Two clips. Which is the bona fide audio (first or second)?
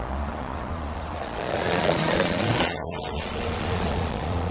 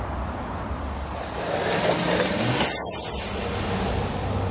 second